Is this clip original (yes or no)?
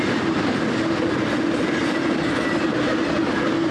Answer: yes